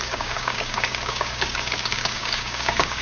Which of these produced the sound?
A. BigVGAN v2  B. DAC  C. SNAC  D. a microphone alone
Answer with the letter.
B